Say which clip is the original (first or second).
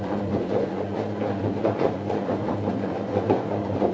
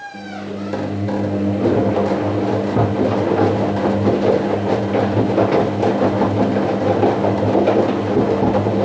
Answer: second